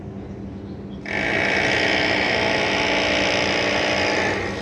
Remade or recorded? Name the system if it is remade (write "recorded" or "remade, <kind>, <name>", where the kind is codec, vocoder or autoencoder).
recorded